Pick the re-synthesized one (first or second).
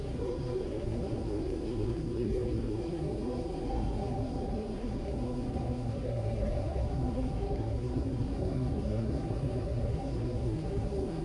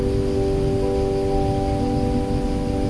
first